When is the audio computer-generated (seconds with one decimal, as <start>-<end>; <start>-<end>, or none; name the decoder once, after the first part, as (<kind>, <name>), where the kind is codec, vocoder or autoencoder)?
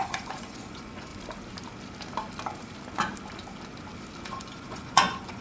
0.0-1.1 (vocoder, Vocos); 4.3-5.4